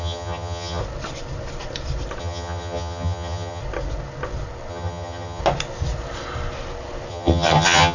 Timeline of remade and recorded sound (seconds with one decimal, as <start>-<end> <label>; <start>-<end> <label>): 0.0-0.8 remade; 0.8-2.2 recorded; 2.2-3.6 remade; 3.6-4.7 recorded; 4.7-5.4 remade; 5.4-7.1 recorded; 7.1-7.9 remade